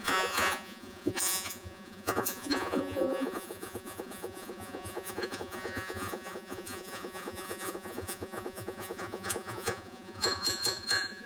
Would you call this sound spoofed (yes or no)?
yes